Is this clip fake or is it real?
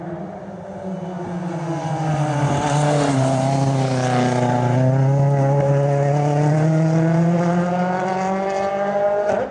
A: real